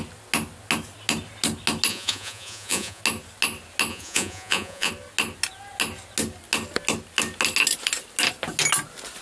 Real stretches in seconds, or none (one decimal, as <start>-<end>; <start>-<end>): 0.0-1.9; 3.0-3.9; 4.9-9.2